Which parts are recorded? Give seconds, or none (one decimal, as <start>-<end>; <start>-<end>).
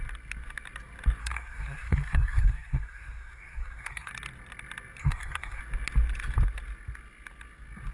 0.0-1.2; 4.1-5.0; 5.6-7.9